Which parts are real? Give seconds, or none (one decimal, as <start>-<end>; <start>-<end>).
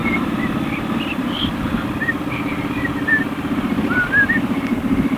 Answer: 0.0-5.2